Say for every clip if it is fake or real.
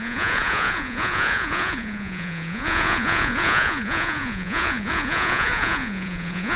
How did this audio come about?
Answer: fake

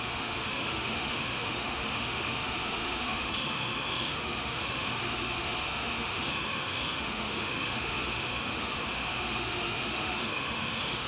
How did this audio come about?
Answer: fake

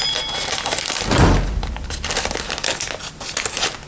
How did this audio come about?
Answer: real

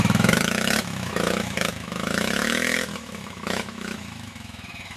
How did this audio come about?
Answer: fake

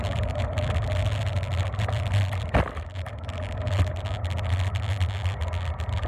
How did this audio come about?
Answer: real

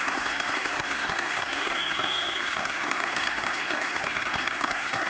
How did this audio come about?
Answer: fake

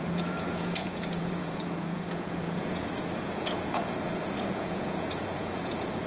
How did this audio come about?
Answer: fake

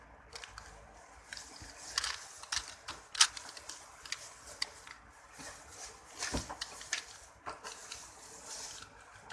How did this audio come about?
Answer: real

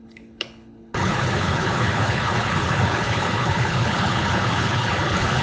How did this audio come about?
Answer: fake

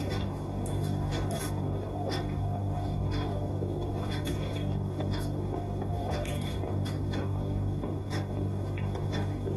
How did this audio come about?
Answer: fake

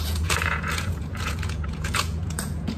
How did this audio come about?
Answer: fake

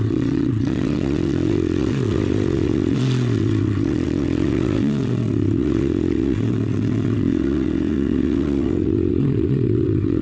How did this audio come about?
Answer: fake